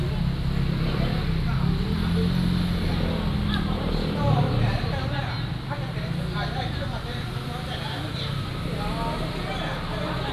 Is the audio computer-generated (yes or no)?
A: no